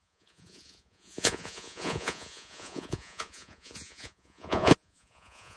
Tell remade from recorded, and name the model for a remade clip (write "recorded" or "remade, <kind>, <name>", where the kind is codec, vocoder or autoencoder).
remade, vocoder, Vocos